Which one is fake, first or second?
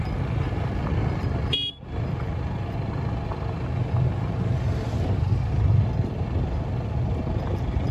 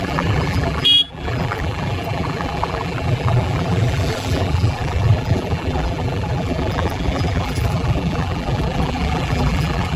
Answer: second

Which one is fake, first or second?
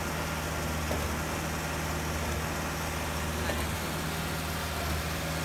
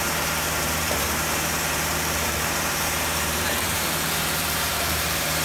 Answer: second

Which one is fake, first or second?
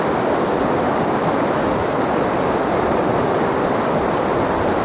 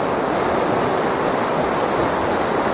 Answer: first